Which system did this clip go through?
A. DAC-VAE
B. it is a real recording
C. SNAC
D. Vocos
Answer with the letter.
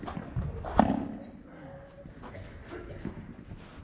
B